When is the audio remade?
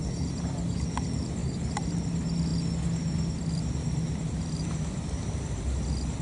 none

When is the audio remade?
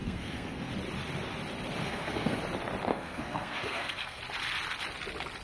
0.0-0.7 (codec, SNAC); 1.8-2.4; 2.9-4.2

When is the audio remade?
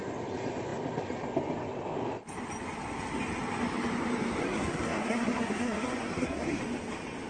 4.4-6.6 (codec, SNAC)